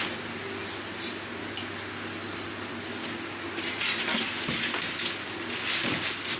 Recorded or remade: recorded